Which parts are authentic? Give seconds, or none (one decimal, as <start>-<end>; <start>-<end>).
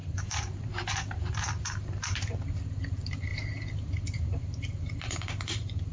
none